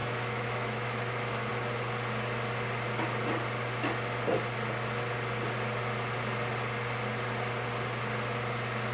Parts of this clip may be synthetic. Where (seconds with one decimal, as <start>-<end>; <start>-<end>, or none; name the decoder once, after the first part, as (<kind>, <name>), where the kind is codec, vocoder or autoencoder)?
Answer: 0.0-1.5 (autoencoder, DAC-VAE)